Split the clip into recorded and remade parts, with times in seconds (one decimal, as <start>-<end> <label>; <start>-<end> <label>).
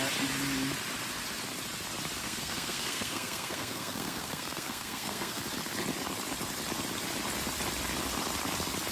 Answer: 0.0-2.2 recorded; 2.2-5.4 remade; 5.4-8.9 recorded